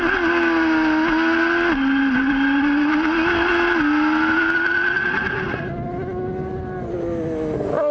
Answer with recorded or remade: recorded